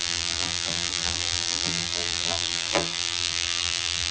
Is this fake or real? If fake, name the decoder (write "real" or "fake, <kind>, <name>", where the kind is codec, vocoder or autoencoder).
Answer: fake, vocoder, BigVGAN v2